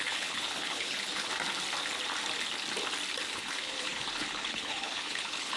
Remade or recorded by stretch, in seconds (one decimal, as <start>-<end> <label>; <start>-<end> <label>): 0.0-1.3 remade; 1.3-3.3 recorded; 3.3-5.6 remade